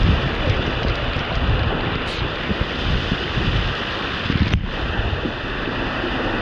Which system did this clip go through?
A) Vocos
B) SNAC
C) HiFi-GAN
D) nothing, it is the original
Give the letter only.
D